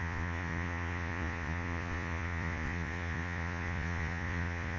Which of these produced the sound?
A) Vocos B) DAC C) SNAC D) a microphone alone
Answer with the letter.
A